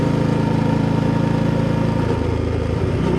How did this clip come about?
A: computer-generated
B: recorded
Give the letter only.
B